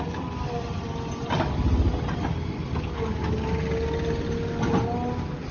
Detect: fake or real real